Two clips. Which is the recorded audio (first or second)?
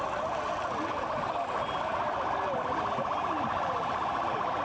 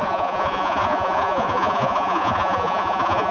first